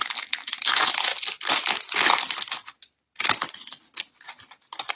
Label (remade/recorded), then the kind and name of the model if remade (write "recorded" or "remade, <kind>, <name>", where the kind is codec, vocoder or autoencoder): recorded